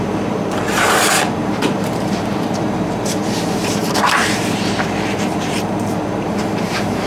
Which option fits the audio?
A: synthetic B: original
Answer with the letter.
A